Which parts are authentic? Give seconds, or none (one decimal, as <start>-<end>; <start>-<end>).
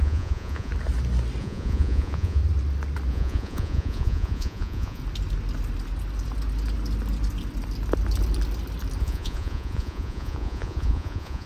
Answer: 0.7-1.4; 2.4-3.1; 5.0-9.0